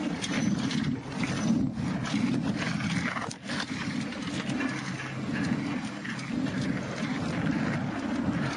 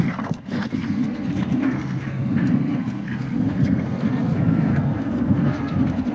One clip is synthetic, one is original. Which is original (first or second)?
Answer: first